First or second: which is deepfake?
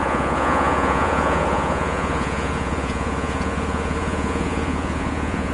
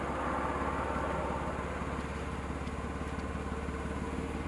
first